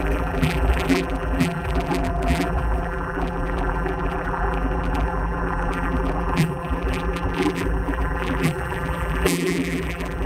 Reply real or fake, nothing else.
fake